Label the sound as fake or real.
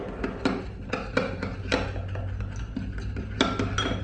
real